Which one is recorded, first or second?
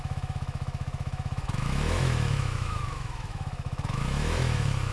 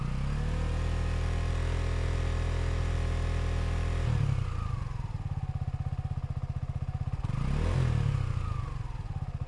second